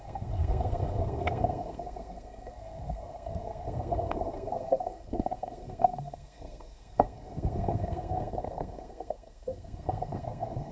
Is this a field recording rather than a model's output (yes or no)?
no